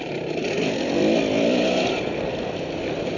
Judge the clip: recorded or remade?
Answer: recorded